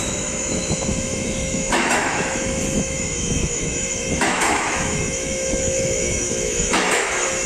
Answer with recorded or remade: remade